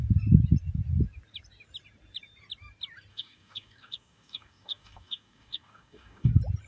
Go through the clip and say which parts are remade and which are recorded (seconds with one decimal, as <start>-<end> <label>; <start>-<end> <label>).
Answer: 0.0-3.1 recorded; 3.1-6.3 remade; 6.3-6.7 recorded